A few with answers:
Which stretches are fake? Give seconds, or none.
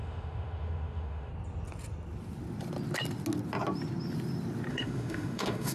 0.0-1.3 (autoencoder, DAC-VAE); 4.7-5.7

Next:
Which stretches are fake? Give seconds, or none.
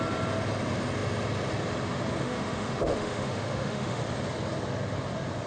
2.2-4.0 (autoencoder, DAC-VAE)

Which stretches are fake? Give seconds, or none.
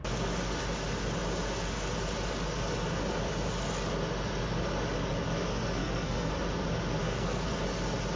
5.8-6.3 (codec, SNAC); 7.0-7.5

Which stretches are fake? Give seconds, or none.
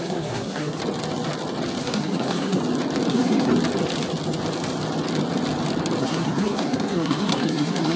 0.0-0.8 (codec, SNAC); 1.8-2.6; 3.1-3.5; 6.0-8.0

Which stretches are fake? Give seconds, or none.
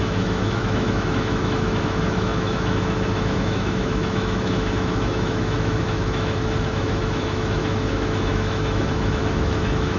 0.0-10.0 (autoencoder, DAC-VAE)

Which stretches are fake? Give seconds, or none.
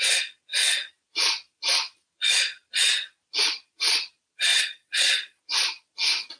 4.5-5.4 (vocoder, Vocos)